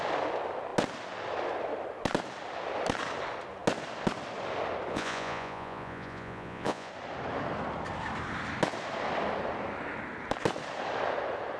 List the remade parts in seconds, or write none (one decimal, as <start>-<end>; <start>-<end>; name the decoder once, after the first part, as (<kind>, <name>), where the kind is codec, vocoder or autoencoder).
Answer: 4.9-6.9 (vocoder, Vocos)